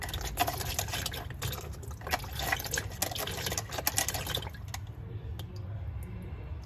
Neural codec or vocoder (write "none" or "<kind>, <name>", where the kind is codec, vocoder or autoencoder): none